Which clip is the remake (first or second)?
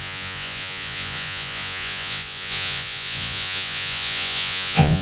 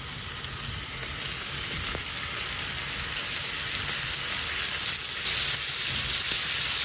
first